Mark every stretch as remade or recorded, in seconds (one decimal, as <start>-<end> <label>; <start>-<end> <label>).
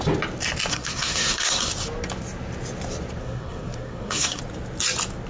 0.0-0.7 recorded; 0.7-1.7 remade; 1.7-3.2 recorded; 3.2-4.4 remade; 4.4-5.3 recorded